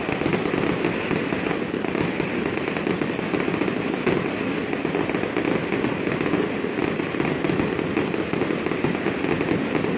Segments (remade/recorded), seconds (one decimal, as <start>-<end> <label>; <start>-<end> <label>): 0.0-10.0 recorded